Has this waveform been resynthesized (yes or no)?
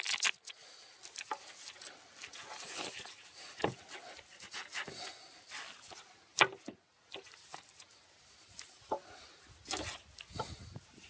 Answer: no